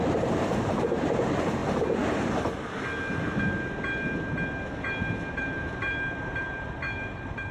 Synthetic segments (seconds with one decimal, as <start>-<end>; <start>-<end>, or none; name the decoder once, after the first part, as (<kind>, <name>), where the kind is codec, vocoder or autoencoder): 0.0-1.6 (vocoder, BigVGAN v2); 5.3-7.5